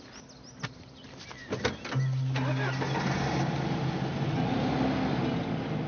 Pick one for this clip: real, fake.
real